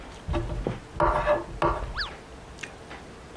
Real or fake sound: real